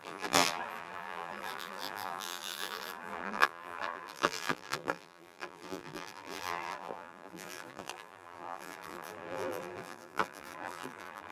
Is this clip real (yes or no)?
no